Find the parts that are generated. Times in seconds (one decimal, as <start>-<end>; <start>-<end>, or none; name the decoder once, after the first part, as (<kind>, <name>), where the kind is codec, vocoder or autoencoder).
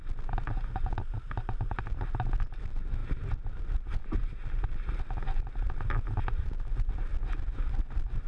none